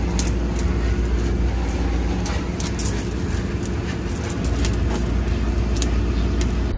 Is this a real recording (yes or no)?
yes